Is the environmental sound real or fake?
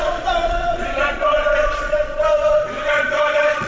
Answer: fake